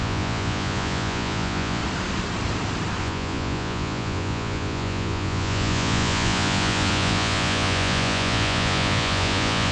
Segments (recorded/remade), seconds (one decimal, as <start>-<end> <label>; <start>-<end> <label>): 0.0-1.8 remade; 1.8-3.0 recorded; 3.0-9.7 remade